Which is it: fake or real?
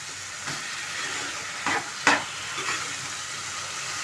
real